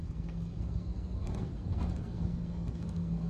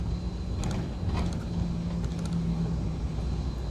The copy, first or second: first